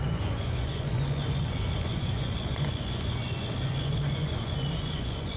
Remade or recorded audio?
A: remade